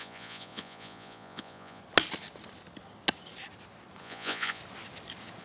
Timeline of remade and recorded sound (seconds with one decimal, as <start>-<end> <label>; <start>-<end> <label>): 0.0-1.8 remade; 1.8-4.0 recorded; 4.0-4.6 remade; 4.6-5.4 recorded